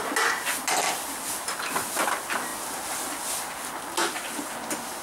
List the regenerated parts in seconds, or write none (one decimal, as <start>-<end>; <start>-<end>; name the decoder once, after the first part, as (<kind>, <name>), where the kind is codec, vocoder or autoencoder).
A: 4.0-4.5 (vocoder, BigVGAN v2)

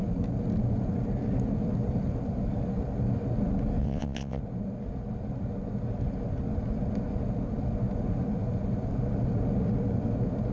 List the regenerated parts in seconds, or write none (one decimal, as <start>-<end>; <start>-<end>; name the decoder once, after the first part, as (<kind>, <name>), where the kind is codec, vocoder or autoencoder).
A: 3.8-4.4 (vocoder, WaveNeXt)

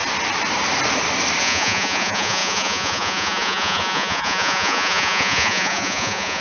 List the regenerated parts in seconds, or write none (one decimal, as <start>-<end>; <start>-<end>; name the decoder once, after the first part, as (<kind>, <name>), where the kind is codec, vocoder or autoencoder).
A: 1.4-6.4 (vocoder, Vocos)

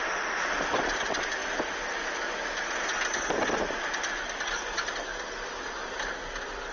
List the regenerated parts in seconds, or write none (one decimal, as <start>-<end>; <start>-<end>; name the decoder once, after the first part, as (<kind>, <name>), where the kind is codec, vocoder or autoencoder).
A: none

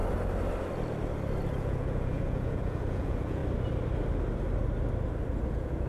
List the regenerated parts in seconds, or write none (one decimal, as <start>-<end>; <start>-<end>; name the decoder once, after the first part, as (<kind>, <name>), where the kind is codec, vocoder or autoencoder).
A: 1.6-3.4 (vocoder, Vocos); 5.5-5.9

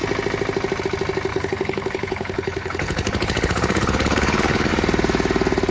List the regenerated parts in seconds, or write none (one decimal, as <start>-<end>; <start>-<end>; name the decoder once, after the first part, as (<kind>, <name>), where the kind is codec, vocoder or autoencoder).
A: 1.3-4.7 (codec, HILCodec)